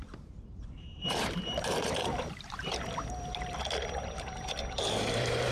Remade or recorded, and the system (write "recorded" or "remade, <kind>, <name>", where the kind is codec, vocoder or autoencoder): remade, vocoder, BigVGAN v2